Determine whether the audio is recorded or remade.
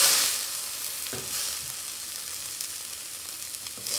recorded